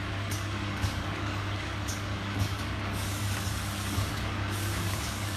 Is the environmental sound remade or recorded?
remade